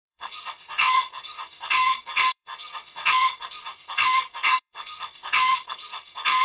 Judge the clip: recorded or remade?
remade